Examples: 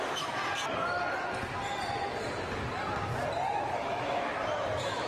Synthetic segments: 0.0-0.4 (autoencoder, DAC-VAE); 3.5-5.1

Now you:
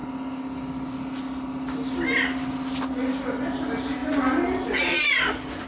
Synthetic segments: none

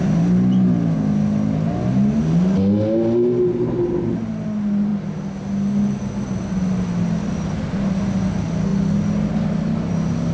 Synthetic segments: none

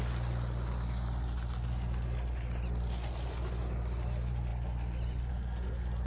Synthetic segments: none

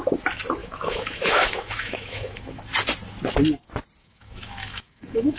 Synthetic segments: 0.6-2.6 (autoencoder, DAC-VAE); 4.0-5.4

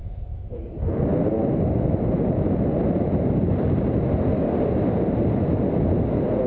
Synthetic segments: 0.0-0.6 (autoencoder, DAC-VAE)